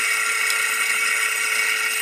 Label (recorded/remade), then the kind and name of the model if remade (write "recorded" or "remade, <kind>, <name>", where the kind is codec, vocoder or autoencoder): recorded